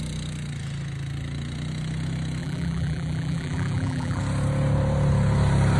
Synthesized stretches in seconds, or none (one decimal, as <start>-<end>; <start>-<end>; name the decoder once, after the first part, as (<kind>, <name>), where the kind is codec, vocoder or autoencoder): 2.4-4.2 (vocoder, BigVGAN v2)